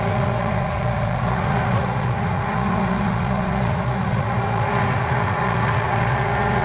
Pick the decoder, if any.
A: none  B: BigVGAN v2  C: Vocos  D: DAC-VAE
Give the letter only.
C